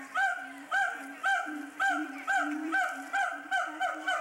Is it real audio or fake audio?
fake